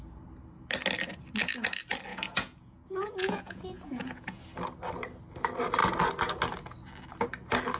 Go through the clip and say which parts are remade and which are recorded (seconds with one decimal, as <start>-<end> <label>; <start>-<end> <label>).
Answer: 0.0-2.1 recorded; 2.1-4.4 remade; 4.4-7.8 recorded